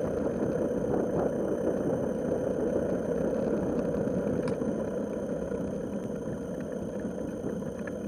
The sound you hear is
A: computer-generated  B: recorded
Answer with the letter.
B